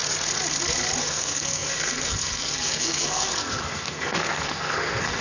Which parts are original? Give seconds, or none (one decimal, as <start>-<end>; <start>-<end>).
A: 0.0-1.0